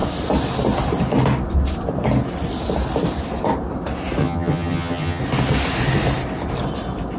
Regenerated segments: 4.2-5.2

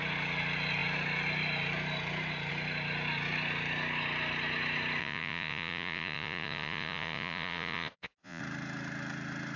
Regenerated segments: 5.0-8.4

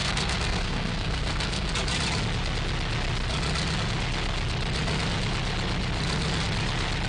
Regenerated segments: 0.0-1.7

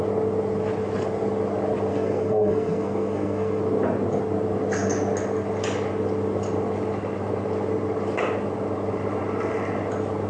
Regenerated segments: 1.9-3.6